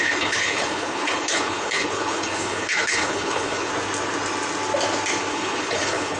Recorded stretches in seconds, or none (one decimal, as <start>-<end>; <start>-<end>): 3.7-5.3

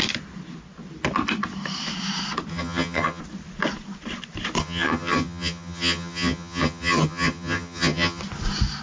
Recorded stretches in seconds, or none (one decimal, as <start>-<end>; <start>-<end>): 0.0-2.5; 3.2-4.6; 8.2-8.8